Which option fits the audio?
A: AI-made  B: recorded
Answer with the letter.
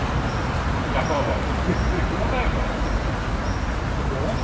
B